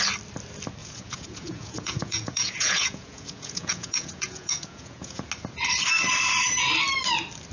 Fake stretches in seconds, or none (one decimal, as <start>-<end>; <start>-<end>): 0.8-5.3